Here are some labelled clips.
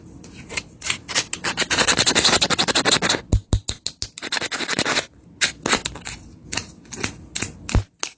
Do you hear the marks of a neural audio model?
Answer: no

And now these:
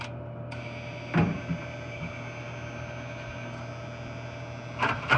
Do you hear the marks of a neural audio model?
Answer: no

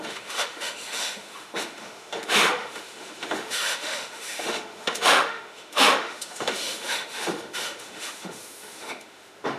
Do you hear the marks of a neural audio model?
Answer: yes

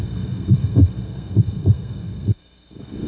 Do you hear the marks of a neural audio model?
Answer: yes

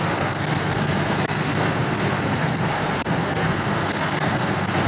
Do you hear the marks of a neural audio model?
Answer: yes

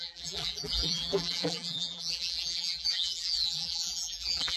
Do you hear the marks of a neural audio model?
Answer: yes